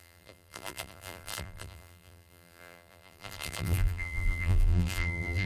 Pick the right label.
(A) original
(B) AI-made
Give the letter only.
B